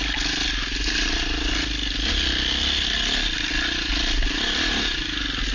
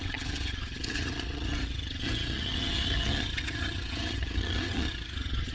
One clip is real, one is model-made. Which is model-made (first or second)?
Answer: second